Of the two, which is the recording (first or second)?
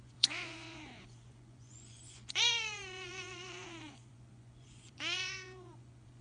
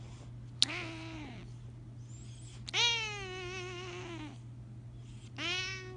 second